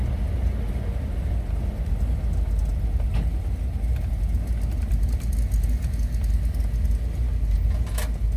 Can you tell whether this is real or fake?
real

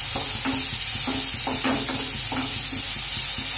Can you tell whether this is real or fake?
real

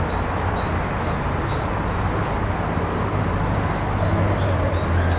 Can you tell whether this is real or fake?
real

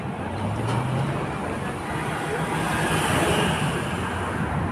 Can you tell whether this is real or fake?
real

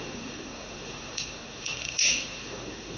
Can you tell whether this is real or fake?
fake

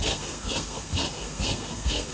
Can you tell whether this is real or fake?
fake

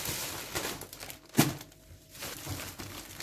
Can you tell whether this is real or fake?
real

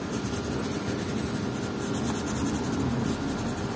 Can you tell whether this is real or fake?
real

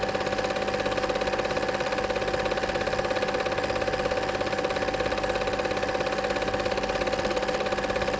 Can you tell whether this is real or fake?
real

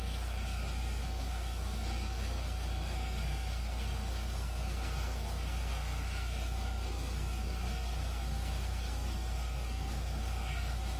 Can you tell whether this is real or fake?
fake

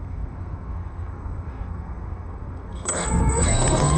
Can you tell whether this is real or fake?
fake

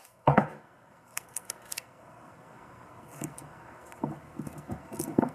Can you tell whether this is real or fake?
fake